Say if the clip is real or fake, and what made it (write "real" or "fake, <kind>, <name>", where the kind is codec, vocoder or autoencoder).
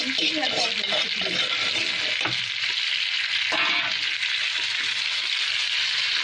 real